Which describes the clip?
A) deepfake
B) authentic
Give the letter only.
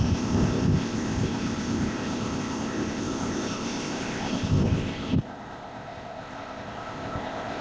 A